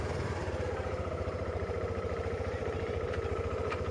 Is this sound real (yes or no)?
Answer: no